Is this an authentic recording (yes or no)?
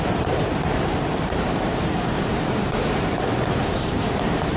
no